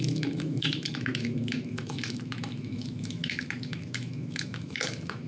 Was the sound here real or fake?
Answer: fake